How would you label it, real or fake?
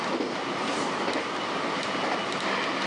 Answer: real